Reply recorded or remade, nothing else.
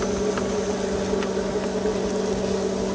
recorded